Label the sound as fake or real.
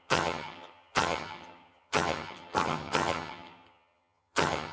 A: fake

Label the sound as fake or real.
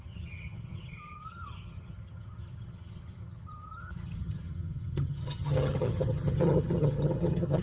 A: fake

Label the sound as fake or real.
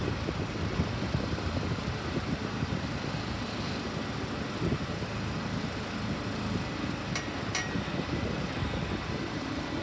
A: real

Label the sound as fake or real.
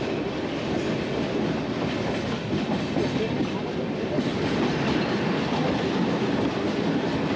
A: real